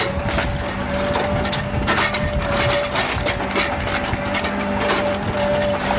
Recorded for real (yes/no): yes